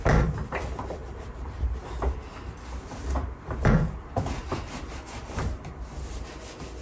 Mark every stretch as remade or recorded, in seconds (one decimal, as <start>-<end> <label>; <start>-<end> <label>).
0.0-1.0 recorded; 1.0-1.6 remade; 1.6-4.4 recorded; 4.4-4.9 remade; 4.9-6.8 recorded